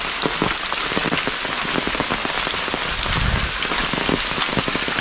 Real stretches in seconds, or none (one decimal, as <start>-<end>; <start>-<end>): 0.0-5.0